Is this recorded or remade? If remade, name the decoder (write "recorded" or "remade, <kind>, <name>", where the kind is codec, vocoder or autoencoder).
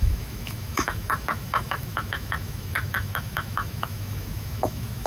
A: remade, autoencoder, DAC-VAE